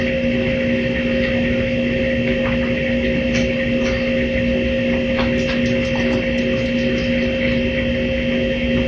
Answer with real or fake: real